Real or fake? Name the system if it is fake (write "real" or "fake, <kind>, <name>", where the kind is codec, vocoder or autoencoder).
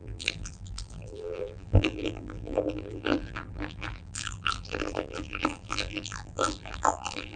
fake, vocoder, BigVGAN v2